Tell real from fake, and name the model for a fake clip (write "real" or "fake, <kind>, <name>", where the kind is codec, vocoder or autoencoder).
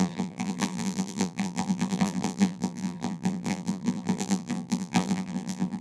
fake, vocoder, BigVGAN v2